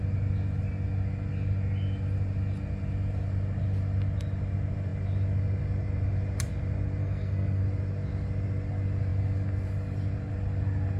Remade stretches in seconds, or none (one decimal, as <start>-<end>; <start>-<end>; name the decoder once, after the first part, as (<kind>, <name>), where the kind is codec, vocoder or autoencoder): 7.0-7.6 (codec, SNAC)